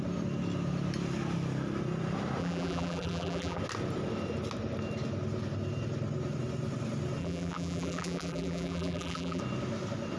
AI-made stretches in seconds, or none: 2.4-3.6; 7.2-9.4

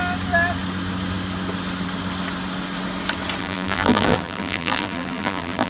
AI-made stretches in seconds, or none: 3.4-5.7

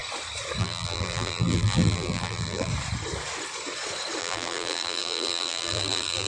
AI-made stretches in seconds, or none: 0.6-2.7; 4.2-6.3

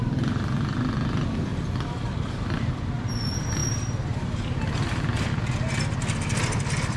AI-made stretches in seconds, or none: none

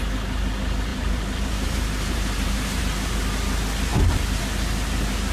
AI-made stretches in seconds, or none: 0.9-2.8

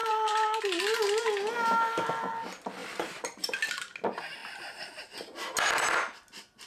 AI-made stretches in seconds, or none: 0.0-0.6; 2.8-3.4